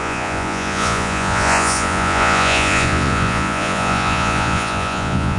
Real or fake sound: fake